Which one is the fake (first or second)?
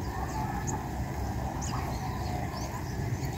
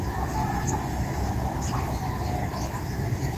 second